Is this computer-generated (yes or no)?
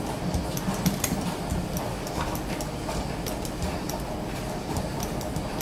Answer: no